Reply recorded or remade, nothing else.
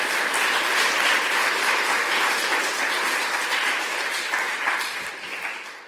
recorded